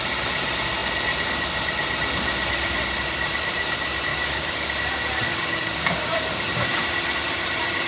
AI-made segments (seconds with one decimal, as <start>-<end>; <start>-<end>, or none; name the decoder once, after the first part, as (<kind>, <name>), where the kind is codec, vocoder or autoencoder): 4.1-4.7 (codec, DAC); 5.3-6.5